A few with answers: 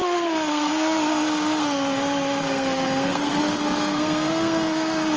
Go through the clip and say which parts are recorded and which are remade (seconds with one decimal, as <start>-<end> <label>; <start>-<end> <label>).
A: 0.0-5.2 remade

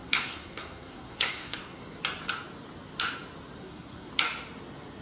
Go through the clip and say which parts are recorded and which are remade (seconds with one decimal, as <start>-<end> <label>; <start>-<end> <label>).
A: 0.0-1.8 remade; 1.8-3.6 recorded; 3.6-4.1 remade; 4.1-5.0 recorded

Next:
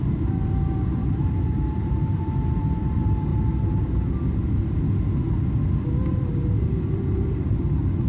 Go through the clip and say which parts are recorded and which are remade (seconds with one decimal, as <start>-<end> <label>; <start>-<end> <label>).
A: 0.0-1.0 recorded; 1.0-2.2 remade; 2.2-3.3 recorded; 3.3-4.8 remade; 4.8-6.1 recorded; 6.1-7.6 remade; 7.6-8.1 recorded

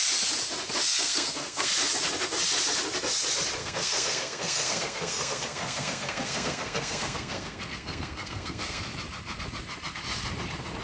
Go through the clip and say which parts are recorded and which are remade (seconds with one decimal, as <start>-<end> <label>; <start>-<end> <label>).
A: 0.0-0.8 recorded; 0.8-1.7 remade; 1.7-3.6 recorded; 3.6-8.8 remade; 8.8-10.8 recorded

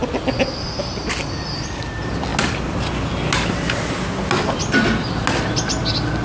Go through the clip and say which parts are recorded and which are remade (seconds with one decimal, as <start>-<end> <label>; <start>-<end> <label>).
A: 0.0-6.2 recorded

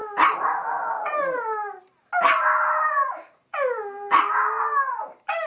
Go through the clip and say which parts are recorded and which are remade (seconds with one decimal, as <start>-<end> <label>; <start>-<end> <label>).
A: 0.0-1.8 remade; 1.8-5.5 recorded

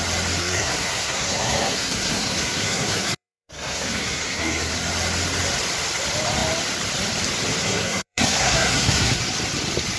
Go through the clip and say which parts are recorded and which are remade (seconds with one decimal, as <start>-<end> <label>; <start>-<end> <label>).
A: 0.0-0.4 recorded; 0.4-4.7 remade; 4.7-7.6 recorded; 7.6-9.2 remade; 9.2-10.0 recorded

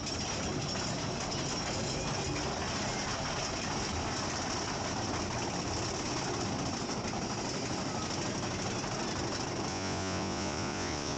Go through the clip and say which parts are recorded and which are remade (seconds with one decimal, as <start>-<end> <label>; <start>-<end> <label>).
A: 0.0-9.7 recorded; 9.7-11.2 remade